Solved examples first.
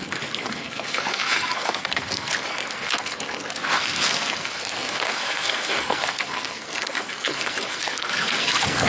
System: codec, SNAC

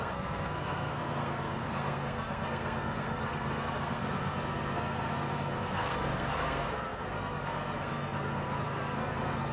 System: codec, SNAC